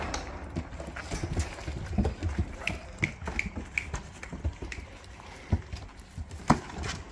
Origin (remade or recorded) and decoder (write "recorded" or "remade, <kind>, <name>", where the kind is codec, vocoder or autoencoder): recorded